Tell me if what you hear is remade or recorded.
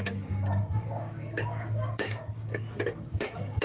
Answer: remade